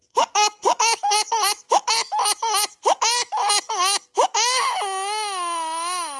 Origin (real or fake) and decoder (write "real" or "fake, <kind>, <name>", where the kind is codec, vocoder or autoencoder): fake, autoencoder, DAC-VAE